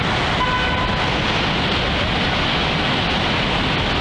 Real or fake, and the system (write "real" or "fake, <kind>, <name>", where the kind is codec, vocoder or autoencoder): real